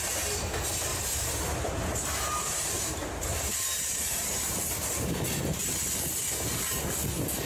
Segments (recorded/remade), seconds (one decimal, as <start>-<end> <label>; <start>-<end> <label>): 0.0-0.9 recorded; 0.9-4.6 remade; 4.6-7.5 recorded